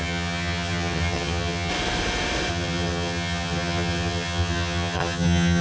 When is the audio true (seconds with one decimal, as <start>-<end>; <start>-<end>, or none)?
1.7-2.5